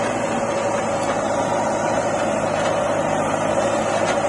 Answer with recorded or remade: recorded